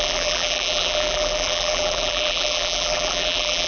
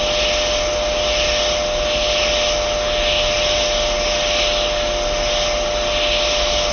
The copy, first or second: first